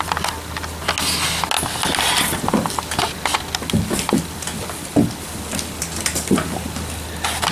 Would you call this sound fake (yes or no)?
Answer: no